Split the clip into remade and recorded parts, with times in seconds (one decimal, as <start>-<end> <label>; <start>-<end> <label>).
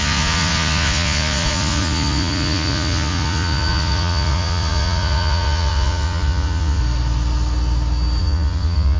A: 0.0-6.8 remade; 6.8-8.2 recorded; 8.2-9.0 remade